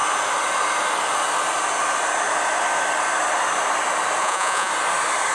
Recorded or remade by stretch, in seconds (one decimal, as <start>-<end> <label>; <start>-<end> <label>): 0.0-4.2 recorded; 4.2-4.7 remade; 4.7-5.3 recorded